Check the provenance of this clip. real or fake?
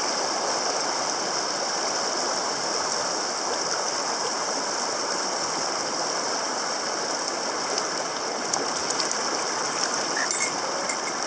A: real